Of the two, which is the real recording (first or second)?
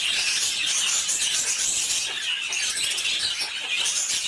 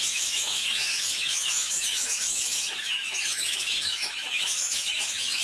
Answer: first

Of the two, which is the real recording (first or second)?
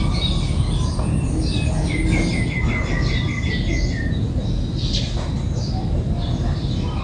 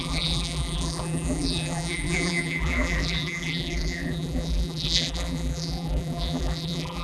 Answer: first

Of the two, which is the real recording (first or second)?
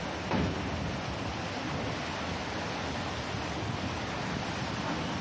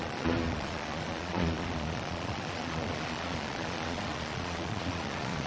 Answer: first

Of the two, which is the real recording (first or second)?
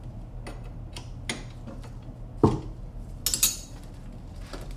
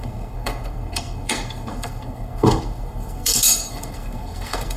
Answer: first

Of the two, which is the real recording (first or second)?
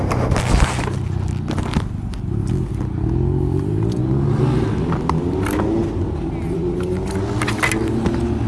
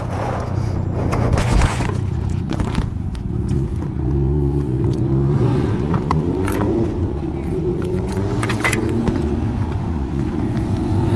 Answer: first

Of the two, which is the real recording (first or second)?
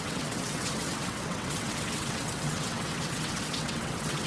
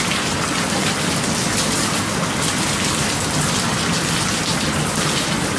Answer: second